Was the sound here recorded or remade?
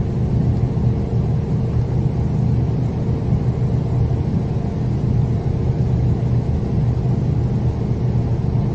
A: recorded